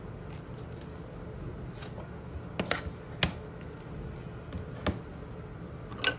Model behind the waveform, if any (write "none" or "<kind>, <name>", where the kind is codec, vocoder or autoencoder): none